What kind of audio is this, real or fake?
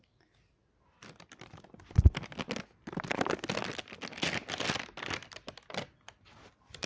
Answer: real